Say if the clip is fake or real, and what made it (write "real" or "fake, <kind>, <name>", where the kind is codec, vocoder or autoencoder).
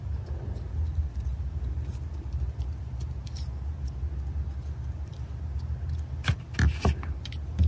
real